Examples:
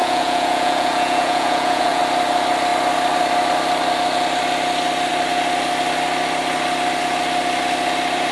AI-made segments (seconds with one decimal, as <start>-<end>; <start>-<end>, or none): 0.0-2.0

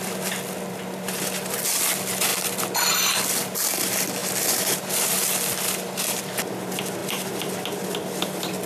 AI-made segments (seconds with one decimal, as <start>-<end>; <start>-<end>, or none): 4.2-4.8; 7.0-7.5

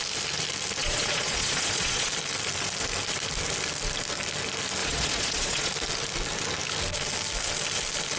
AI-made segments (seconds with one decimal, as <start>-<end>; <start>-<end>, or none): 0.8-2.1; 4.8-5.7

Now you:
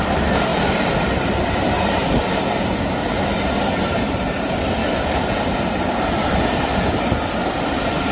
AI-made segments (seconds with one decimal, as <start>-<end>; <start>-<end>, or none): 0.5-2.3; 4.8-6.6

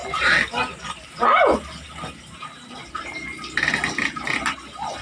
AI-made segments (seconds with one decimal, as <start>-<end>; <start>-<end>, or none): none

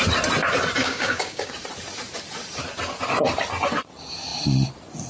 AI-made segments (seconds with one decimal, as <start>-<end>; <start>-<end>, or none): 0.8-1.5